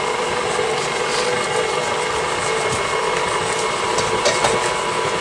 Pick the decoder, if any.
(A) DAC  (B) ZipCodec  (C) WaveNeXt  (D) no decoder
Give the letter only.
D